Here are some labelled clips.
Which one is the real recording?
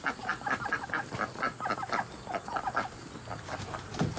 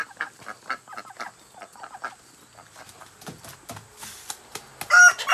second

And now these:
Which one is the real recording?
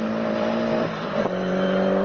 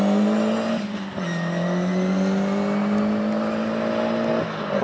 second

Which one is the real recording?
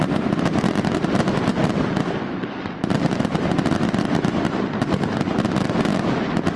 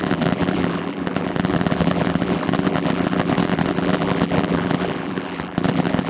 first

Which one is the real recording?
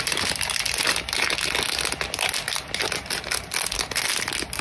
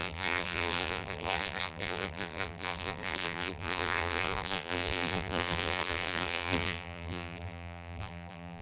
first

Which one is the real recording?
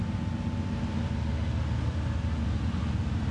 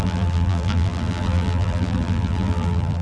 first